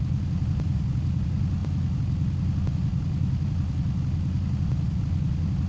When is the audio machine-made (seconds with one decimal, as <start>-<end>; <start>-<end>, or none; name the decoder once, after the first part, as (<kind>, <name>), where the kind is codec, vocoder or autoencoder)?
none